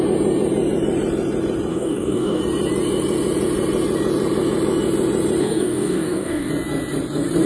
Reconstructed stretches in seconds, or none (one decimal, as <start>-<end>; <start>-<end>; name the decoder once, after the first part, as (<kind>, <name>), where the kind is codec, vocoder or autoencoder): 1.7-2.4 (codec, DAC); 5.4-6.5